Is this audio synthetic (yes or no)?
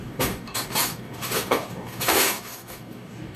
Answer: yes